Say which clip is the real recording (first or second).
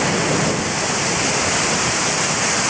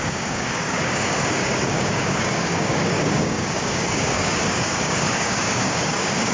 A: first